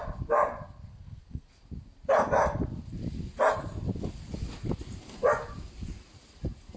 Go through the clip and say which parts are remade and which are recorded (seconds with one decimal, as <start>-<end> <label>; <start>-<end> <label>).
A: 0.0-0.9 recorded; 0.9-1.5 remade; 1.5-6.8 recorded